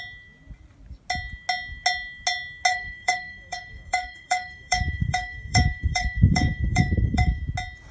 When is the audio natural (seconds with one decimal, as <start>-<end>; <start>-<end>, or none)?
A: 0.0-2.7; 7.4-7.9